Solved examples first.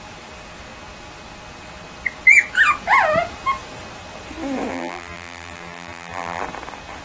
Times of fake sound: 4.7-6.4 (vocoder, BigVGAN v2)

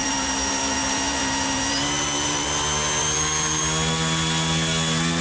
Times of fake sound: 0.0-2.6 (vocoder, BigVGAN v2); 3.0-3.6

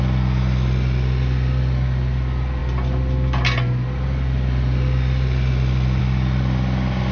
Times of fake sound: none

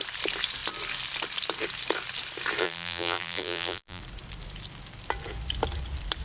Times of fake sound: 2.6-4.0 (vocoder, BigVGAN v2)

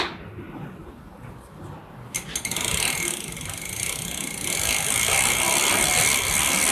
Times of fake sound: none

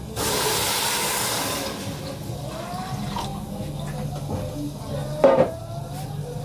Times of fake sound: 5.0-5.6 (vocoder, BigVGAN v2)